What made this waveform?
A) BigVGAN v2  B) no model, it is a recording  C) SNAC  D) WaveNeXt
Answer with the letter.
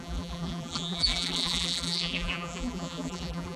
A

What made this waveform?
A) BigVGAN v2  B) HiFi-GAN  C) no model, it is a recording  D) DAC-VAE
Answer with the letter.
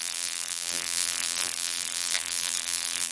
A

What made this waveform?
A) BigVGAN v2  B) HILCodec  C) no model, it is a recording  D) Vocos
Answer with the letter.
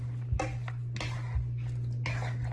C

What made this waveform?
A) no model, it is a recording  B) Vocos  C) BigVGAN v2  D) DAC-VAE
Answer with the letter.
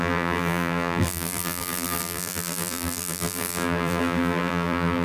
C